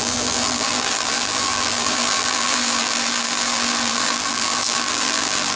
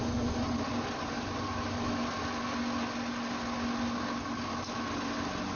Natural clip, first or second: second